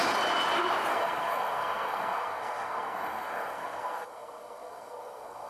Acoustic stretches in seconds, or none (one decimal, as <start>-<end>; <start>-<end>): 0.0-0.9